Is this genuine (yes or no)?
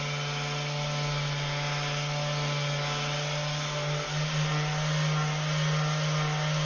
yes